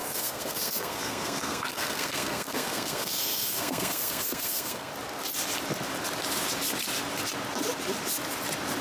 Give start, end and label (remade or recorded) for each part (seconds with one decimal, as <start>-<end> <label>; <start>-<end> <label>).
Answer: 0.0-4.9 remade; 4.9-8.8 recorded